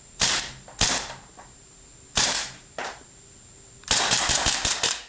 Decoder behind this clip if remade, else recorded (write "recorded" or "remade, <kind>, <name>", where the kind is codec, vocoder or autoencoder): remade, vocoder, BigVGAN v2